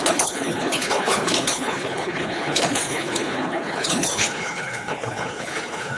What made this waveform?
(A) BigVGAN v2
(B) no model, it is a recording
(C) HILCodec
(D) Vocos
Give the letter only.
C